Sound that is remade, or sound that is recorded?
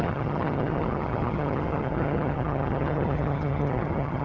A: remade